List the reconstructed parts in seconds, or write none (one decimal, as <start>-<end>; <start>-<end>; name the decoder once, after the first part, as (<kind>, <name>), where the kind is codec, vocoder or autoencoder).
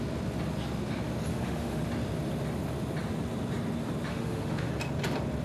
1.3-1.8 (autoencoder, DAC-VAE); 4.1-4.7